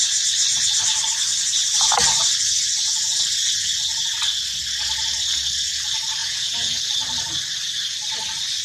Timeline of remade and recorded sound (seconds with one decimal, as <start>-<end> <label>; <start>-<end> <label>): 0.0-6.2 recorded; 6.2-6.8 remade; 6.8-8.6 recorded